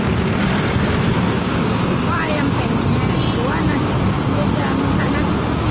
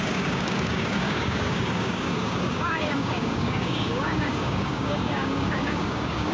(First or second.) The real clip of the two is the first